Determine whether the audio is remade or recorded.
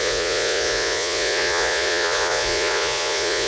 remade